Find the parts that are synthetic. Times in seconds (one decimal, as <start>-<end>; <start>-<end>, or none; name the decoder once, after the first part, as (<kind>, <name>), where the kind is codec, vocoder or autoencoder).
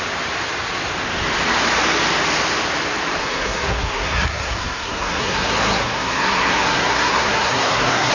3.2-8.1 (codec, SNAC)